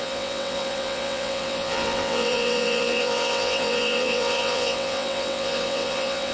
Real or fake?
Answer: fake